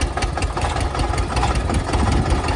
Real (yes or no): yes